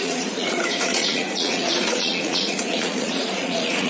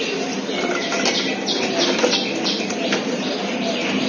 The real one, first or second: second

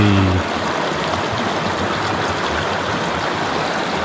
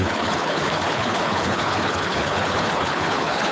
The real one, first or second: first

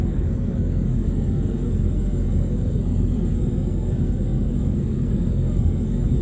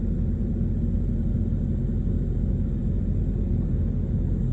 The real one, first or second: second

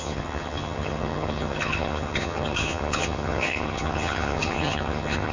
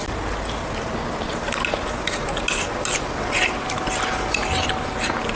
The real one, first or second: second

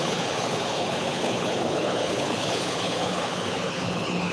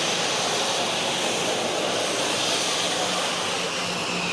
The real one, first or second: second